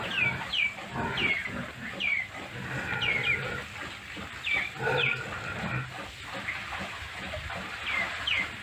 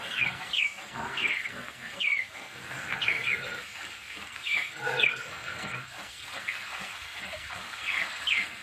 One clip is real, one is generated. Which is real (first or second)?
first